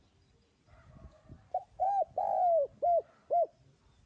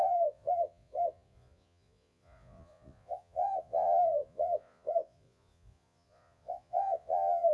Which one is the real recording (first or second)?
first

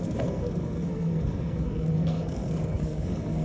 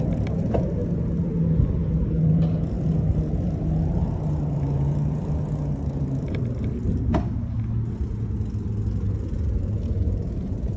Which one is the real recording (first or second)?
second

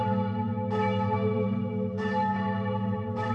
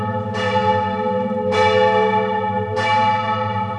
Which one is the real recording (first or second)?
second